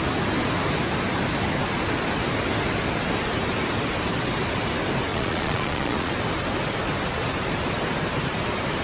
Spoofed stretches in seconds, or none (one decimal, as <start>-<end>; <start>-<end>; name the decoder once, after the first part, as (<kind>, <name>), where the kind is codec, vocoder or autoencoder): 5.1-6.1 (vocoder, Vocos)